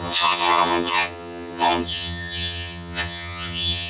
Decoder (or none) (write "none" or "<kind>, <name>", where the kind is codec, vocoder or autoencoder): vocoder, HiFi-GAN